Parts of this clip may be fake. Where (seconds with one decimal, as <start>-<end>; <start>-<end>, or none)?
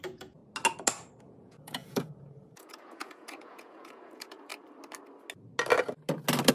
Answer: 0.0-0.4; 1.2-4.5